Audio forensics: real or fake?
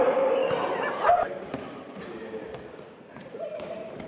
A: fake